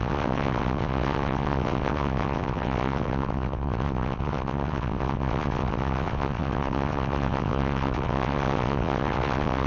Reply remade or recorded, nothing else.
remade